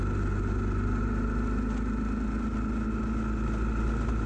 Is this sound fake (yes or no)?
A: no